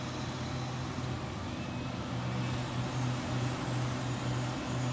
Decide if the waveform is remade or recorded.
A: recorded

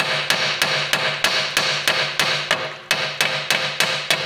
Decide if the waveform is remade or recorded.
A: recorded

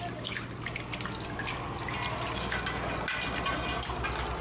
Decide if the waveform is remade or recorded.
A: recorded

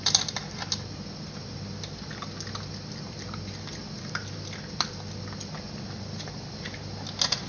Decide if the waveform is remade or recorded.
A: recorded